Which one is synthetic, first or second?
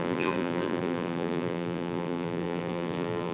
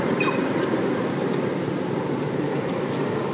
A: first